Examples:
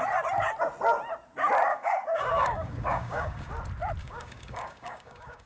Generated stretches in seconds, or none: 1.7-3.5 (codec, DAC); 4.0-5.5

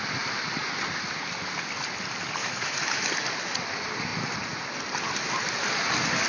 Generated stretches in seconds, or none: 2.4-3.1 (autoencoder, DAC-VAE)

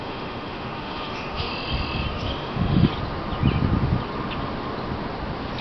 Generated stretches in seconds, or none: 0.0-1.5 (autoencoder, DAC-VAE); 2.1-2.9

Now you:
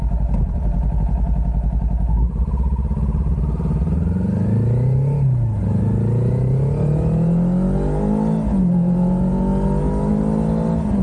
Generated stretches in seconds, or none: none